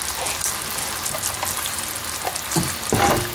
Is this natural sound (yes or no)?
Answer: yes